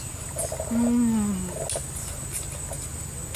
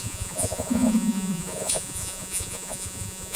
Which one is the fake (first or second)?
second